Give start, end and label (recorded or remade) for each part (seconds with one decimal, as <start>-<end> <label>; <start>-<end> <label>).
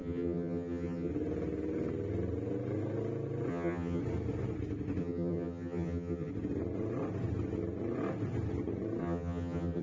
0.0-1.1 remade; 1.1-3.5 recorded; 3.5-4.0 remade; 4.0-5.0 recorded; 5.0-6.3 remade; 6.3-9.0 recorded; 9.0-9.8 remade